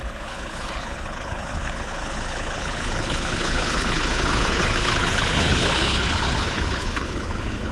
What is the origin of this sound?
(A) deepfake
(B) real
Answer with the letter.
A